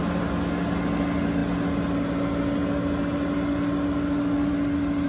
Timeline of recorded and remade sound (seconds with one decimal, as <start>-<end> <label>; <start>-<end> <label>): 0.0-5.1 recorded